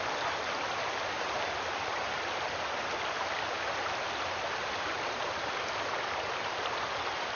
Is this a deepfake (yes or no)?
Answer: no